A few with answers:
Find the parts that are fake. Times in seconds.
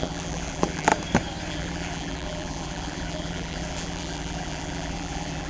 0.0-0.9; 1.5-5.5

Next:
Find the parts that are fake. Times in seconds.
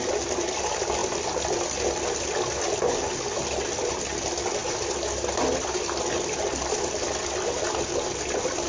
1.0-2.6; 4.6-7.2